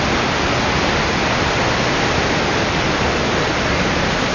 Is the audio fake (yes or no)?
no